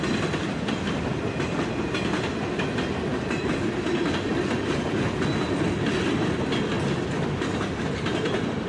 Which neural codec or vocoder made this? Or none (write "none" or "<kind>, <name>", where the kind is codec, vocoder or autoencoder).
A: none